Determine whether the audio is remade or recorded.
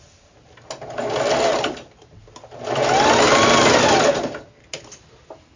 recorded